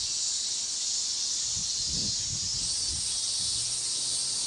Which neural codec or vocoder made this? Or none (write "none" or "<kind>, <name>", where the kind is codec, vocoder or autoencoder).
none